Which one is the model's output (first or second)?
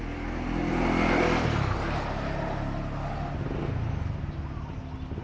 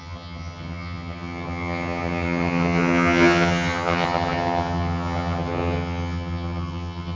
second